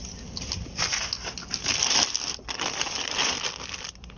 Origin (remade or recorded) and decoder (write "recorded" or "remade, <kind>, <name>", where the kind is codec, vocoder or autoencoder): recorded